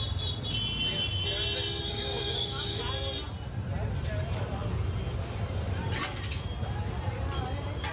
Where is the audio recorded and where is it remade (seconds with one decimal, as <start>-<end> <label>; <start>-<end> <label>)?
0.0-1.9 recorded; 1.9-2.8 remade; 2.8-7.9 recorded

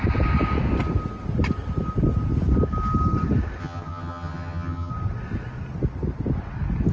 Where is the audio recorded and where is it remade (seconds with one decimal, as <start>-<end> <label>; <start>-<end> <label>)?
0.0-3.6 recorded; 3.6-4.9 remade; 4.9-6.9 recorded

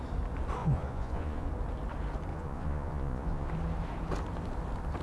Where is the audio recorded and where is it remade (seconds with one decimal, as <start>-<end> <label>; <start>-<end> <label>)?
0.0-0.6 recorded; 0.6-1.5 remade; 1.5-2.3 recorded; 2.3-3.5 remade; 3.5-5.0 recorded

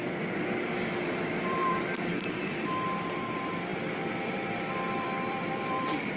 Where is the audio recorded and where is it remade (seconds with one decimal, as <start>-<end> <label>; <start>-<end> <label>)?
0.0-3.7 remade; 3.7-4.3 recorded; 4.3-6.2 remade

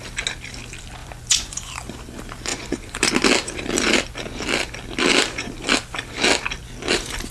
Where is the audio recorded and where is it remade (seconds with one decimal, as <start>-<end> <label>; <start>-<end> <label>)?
0.0-1.0 recorded; 1.0-1.7 remade; 1.7-2.5 recorded; 2.5-3.1 remade; 3.1-7.3 recorded

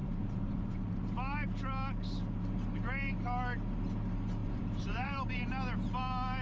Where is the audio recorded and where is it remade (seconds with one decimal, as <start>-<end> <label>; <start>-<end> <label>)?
0.0-1.0 remade; 1.0-4.4 recorded; 4.4-5.3 remade; 5.3-6.4 recorded